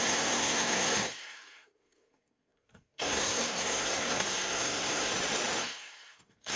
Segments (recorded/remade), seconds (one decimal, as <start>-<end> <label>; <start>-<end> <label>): 0.0-5.1 remade; 5.1-5.6 recorded; 5.6-6.6 remade